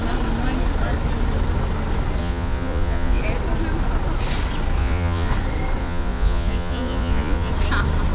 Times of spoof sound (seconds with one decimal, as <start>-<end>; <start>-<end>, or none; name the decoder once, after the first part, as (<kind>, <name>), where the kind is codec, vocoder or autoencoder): 2.2-3.2 (vocoder, Vocos); 4.8-5.3; 5.8-7.5